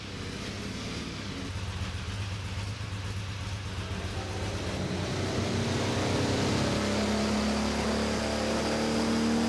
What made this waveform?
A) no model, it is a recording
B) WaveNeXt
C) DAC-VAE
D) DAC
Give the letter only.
A